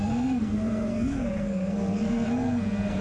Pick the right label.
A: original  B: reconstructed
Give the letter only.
B